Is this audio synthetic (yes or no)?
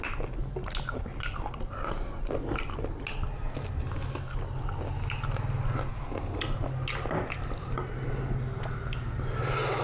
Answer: no